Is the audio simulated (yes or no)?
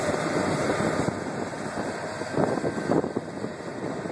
no